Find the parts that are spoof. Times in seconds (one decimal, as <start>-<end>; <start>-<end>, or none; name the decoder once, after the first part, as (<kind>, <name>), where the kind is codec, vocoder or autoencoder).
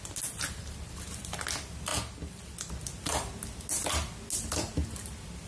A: none